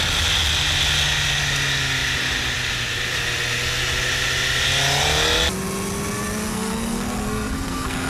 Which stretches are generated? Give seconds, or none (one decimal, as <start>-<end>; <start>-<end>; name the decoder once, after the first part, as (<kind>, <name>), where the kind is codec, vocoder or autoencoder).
6.5-8.1 (codec, SNAC)